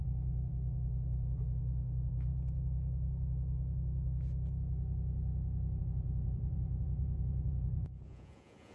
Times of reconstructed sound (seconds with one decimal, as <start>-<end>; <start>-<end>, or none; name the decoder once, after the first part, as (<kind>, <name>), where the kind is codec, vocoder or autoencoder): 0.0-2.3 (vocoder, Vocos); 5.8-8.7